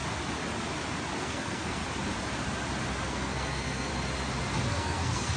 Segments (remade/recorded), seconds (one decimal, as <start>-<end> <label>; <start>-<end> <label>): 0.0-1.2 recorded; 1.2-1.8 remade; 1.8-3.0 recorded; 3.0-3.9 remade; 3.9-4.7 recorded; 4.7-5.4 remade

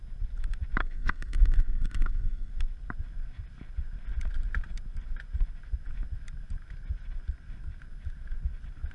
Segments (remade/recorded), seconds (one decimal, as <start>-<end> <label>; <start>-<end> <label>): 0.0-0.8 recorded; 0.8-2.5 remade; 2.5-8.9 recorded

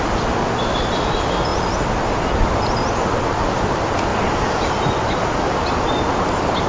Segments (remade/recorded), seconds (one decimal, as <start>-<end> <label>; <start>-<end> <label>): 0.0-6.7 recorded

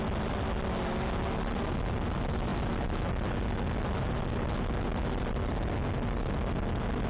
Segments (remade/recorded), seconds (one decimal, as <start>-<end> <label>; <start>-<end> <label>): 0.0-7.1 recorded